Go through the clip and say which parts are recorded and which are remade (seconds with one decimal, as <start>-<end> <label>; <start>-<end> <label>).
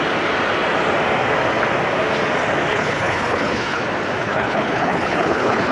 0.0-2.7 recorded; 2.7-3.8 remade; 3.8-4.2 recorded; 4.2-5.7 remade